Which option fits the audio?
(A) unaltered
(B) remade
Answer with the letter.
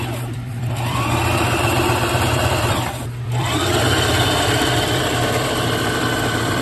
B